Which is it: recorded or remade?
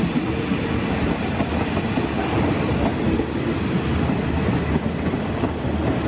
recorded